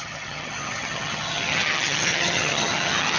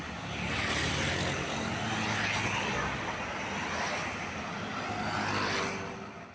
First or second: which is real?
second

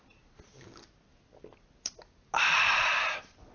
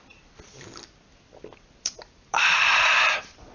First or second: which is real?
first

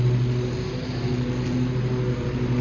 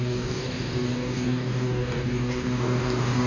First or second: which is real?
first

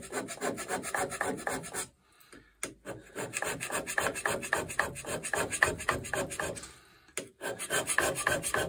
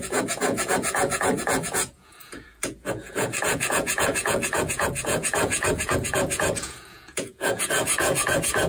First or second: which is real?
first